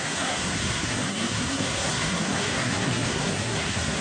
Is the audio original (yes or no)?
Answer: no